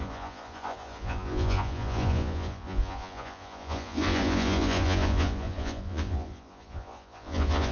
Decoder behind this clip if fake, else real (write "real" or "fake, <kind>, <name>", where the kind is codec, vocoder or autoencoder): fake, vocoder, Vocos